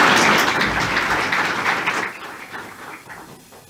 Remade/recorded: recorded